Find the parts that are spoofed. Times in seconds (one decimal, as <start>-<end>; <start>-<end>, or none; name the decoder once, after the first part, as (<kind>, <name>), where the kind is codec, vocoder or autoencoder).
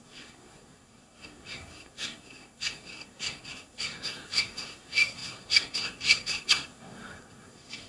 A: 0.0-7.9 (codec, SNAC)